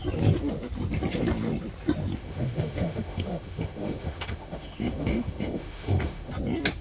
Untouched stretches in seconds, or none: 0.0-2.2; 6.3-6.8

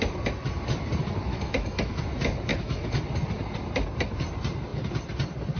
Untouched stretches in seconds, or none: 0.0-1.3; 2.0-2.5; 3.0-5.6

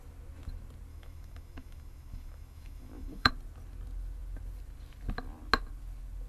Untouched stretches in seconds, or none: 0.0-0.9; 3.3-6.3

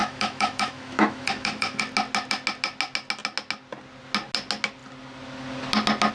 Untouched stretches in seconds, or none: 1.8-6.1

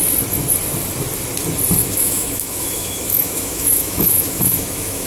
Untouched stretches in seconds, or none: 0.0-1.8

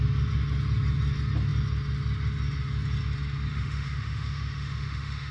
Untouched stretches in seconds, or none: 0.0-3.5

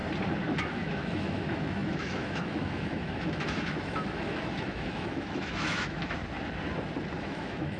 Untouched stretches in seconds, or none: 0.0-0.6; 6.2-7.2

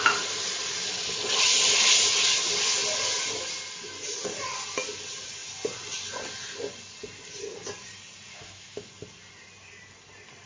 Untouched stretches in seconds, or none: 0.0-8.3; 8.9-10.5